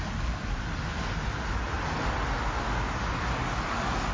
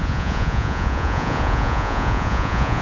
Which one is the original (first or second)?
first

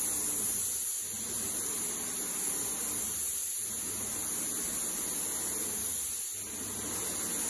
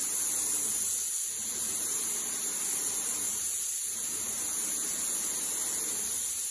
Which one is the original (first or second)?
first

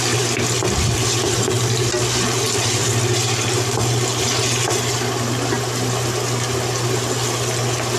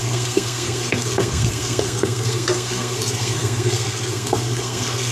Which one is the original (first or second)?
first